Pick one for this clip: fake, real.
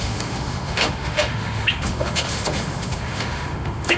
fake